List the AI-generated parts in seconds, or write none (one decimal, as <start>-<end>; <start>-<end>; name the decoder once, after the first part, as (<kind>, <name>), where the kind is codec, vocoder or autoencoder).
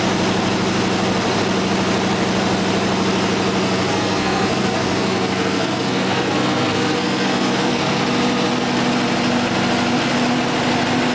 3.6-8.0 (codec, SNAC)